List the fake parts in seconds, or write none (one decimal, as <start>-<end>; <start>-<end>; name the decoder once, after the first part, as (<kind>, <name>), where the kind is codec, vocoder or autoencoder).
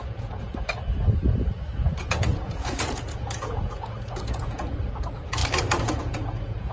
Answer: 0.0-0.5 (vocoder, Vocos); 2.0-5.4; 6.0-6.7